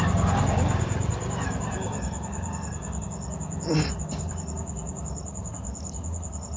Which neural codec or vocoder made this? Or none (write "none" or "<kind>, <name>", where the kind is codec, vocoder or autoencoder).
none